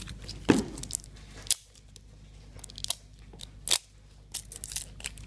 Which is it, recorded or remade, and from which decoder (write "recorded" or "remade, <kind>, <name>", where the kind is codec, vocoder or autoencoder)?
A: recorded